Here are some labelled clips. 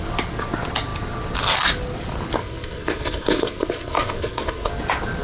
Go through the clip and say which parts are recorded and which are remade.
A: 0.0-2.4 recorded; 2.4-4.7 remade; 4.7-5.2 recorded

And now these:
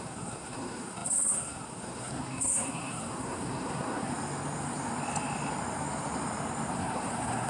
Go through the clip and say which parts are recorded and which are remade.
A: 0.0-4.1 remade; 4.1-6.7 recorded; 6.7-7.5 remade

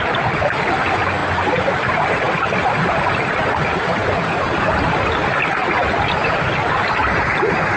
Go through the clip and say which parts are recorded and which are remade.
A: 0.0-7.8 recorded